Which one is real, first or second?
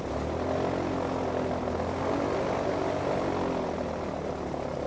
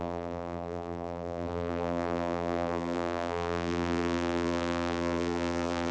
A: first